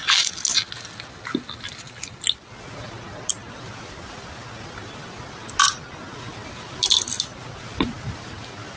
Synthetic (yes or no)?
no